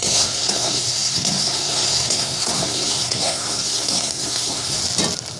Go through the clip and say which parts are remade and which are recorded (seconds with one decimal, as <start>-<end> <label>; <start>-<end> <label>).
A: 0.0-4.8 remade; 4.8-5.4 recorded